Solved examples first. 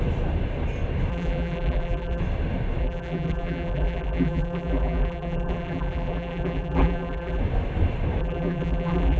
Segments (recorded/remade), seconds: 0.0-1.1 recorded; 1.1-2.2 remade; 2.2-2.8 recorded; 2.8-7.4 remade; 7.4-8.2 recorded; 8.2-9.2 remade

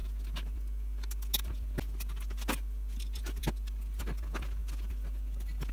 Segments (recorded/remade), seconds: 0.0-5.7 recorded